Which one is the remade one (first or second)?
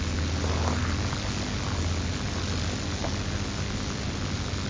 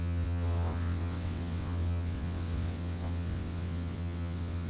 second